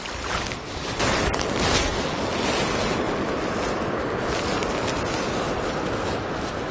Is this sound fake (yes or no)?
no